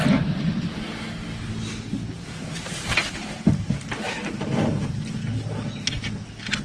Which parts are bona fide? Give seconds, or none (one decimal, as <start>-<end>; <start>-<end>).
1.0-2.0; 5.0-6.6